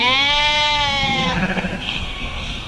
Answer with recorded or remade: remade